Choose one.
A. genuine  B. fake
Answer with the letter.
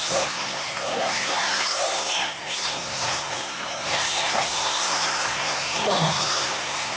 B